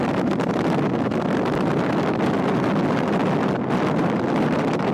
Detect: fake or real real